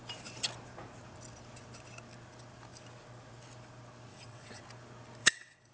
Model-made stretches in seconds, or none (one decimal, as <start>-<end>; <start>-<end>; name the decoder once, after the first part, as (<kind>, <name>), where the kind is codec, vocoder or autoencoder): 4.1-4.6 (vocoder, WaveNeXt); 5.2-5.7